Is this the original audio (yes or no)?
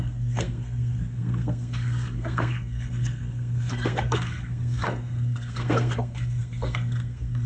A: no